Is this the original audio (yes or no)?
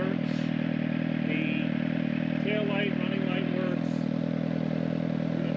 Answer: yes